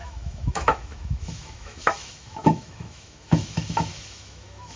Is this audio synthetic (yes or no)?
yes